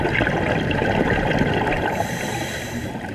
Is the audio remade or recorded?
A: recorded